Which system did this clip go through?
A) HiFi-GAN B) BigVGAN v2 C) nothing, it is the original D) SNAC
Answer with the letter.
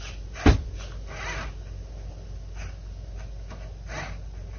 C